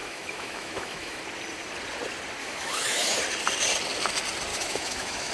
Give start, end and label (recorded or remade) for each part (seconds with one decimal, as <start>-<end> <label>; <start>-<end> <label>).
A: 0.0-1.2 remade; 1.2-2.4 recorded; 2.4-3.2 remade; 3.2-4.5 recorded; 4.5-5.3 remade